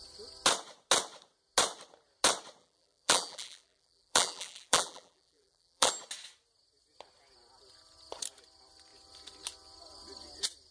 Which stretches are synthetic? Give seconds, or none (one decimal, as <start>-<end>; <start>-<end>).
2.6-5.9